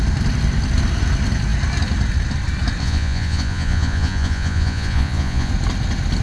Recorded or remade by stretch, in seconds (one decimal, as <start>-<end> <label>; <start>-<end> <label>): 0.0-2.8 recorded; 2.8-5.5 remade; 5.5-6.2 recorded